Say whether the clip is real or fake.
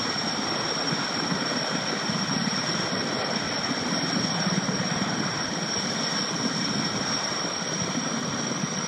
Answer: real